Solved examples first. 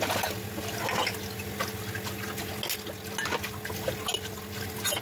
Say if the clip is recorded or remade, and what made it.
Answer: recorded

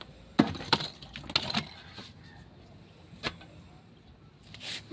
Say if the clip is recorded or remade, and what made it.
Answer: recorded